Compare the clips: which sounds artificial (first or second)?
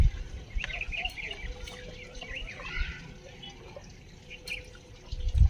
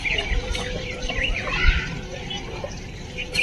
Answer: second